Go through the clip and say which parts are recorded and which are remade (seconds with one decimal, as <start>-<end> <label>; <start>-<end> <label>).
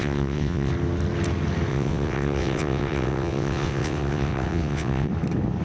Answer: 0.0-0.7 remade; 0.7-1.7 recorded; 1.7-5.1 remade; 5.1-5.6 recorded